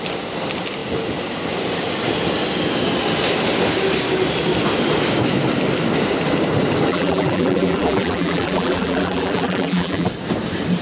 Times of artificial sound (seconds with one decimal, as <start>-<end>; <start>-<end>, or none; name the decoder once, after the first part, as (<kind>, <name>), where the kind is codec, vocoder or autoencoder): 6.9-10.1 (vocoder, BigVGAN v2)